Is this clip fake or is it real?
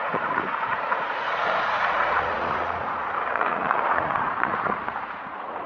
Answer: fake